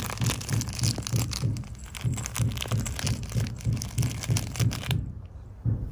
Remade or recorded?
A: remade